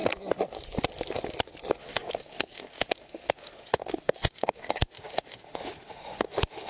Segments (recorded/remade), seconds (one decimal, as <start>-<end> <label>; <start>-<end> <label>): 0.0-1.8 recorded; 1.8-6.7 remade